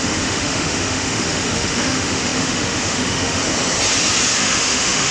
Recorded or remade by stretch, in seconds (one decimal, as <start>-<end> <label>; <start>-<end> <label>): 0.0-3.4 remade; 3.4-4.4 recorded; 4.4-5.1 remade